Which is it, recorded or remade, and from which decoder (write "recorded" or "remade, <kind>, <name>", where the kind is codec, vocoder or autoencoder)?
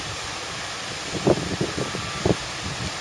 recorded